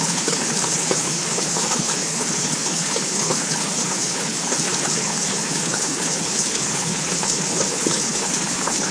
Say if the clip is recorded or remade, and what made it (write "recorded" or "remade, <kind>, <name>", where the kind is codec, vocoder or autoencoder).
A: remade, codec, HILCodec